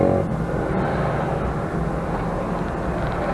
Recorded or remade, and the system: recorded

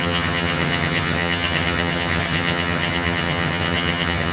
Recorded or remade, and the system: remade, vocoder, HiFi-GAN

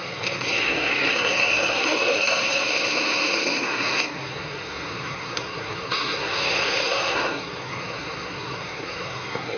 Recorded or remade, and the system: remade, codec, SNAC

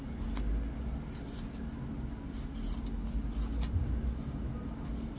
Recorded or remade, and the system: recorded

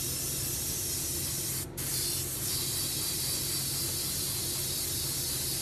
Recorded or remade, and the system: recorded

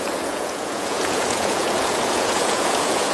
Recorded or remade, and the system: remade, vocoder, Vocos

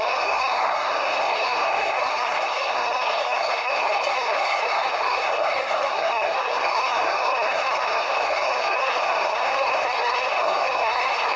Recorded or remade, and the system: remade, codec, SNAC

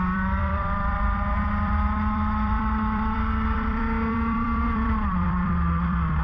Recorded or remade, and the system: remade, vocoder, BigVGAN v2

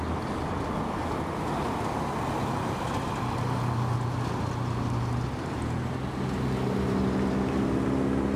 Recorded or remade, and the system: recorded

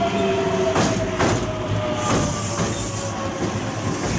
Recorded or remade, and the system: recorded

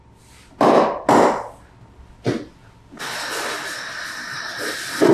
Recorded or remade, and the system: recorded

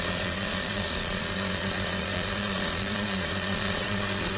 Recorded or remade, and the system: remade, vocoder, Vocos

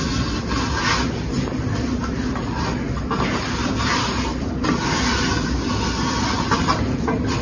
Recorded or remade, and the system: recorded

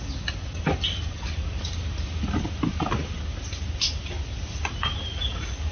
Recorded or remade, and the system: recorded